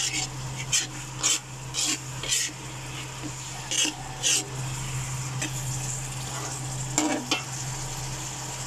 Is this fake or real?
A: real